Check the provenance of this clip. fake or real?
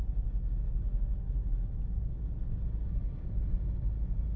real